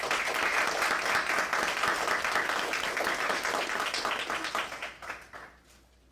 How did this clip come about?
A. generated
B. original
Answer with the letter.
B